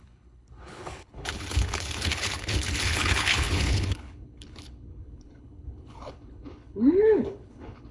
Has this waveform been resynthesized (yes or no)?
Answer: yes